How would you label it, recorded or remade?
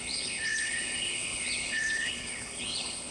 remade